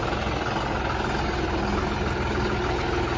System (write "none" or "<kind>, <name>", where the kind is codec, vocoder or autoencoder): none